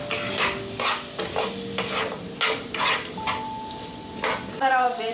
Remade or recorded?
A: recorded